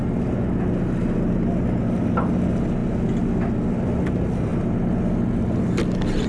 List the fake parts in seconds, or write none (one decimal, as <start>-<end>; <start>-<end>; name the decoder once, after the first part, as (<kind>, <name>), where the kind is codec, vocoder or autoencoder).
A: none